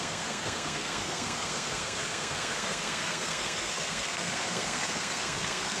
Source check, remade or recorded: remade